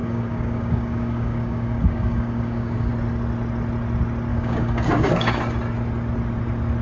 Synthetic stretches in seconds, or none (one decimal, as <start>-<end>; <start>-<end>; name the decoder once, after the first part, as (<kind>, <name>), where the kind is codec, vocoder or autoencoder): 0.0-2.9 (codec, DAC); 4.3-5.4